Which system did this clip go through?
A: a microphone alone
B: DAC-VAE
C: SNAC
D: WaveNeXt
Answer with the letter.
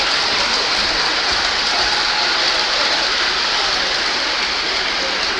A